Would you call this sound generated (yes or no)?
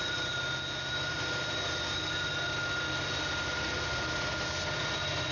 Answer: no